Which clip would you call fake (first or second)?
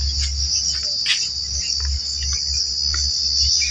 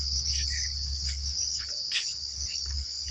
second